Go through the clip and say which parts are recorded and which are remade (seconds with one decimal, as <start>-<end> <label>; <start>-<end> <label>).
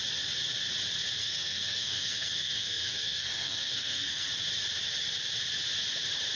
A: 0.0-1.2 recorded; 1.2-4.3 remade; 4.3-6.4 recorded